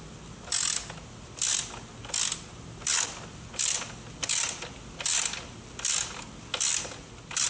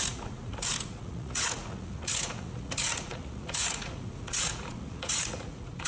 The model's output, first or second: second